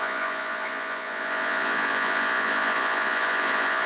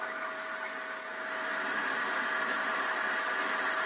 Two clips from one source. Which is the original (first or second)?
second